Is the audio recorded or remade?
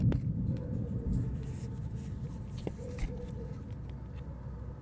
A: recorded